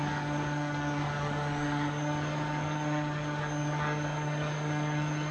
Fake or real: fake